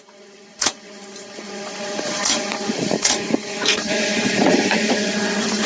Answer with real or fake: fake